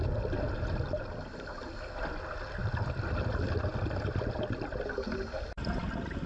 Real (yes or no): yes